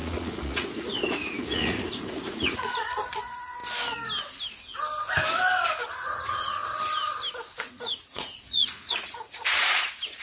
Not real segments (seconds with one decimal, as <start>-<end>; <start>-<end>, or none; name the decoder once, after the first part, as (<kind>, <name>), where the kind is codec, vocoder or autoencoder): 0.0-3.6 (vocoder, Vocos); 5.8-6.6; 7.6-10.2